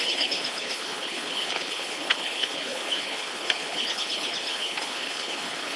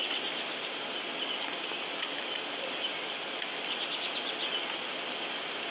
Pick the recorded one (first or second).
second